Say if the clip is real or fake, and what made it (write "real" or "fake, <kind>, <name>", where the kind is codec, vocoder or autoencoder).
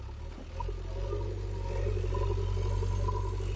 real